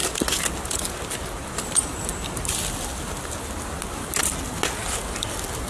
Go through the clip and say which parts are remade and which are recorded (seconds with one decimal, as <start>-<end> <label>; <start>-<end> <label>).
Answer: 0.0-5.7 recorded